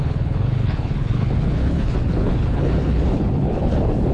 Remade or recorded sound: remade